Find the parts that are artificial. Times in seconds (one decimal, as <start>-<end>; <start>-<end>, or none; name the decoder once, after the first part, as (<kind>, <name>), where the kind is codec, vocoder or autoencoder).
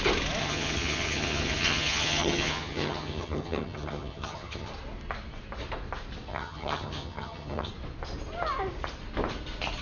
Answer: 0.4-4.7 (vocoder, HiFi-GAN); 6.3-7.7